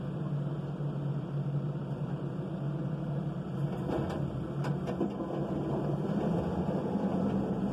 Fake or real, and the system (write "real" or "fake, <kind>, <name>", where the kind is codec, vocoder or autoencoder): real